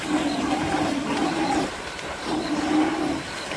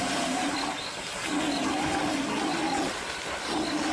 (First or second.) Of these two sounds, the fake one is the first